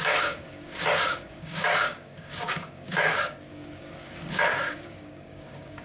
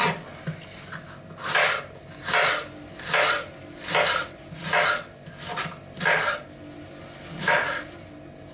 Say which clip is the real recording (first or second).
second